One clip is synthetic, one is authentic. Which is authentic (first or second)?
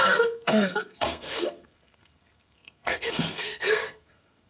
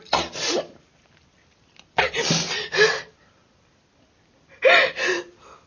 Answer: second